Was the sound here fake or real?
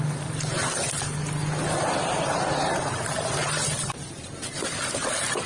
real